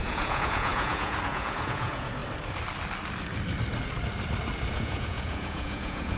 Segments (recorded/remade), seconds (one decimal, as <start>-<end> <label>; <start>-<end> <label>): 0.0-2.2 remade; 2.2-4.7 recorded; 4.7-6.2 remade